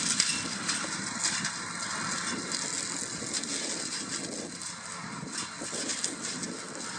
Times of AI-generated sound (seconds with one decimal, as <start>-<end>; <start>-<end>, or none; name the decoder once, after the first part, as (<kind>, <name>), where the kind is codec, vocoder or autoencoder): none